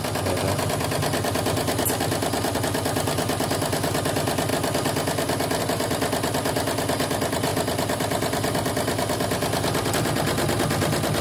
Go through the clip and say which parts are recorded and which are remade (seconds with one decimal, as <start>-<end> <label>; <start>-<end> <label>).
0.0-11.2 recorded